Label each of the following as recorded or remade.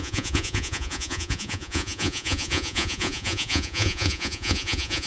remade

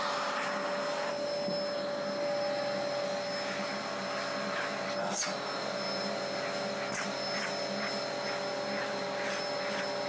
recorded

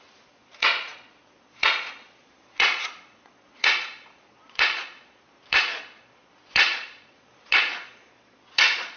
remade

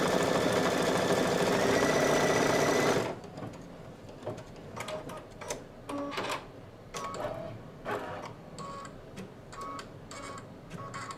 recorded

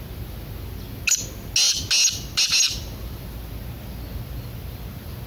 recorded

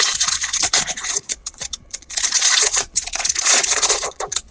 remade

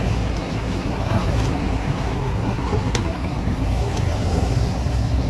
remade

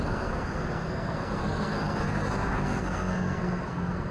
remade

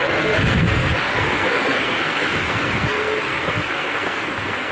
remade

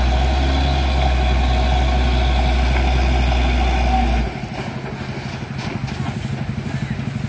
recorded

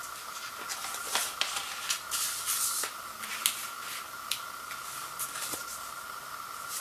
recorded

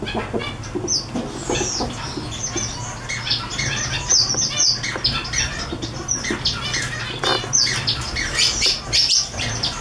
recorded